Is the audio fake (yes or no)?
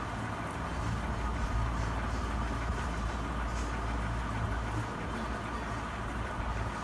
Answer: no